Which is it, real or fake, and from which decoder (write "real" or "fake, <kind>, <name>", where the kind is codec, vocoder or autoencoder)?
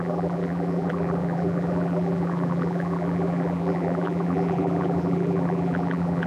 fake, vocoder, BigVGAN v2